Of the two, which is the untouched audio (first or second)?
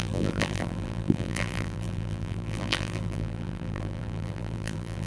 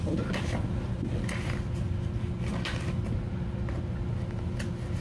second